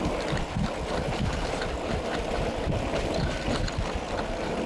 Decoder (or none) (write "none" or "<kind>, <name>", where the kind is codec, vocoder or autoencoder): none